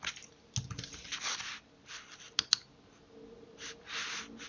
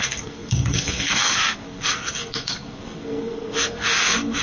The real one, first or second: first